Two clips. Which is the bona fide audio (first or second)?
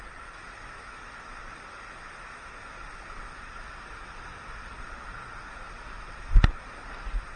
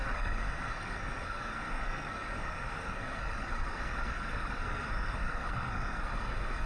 first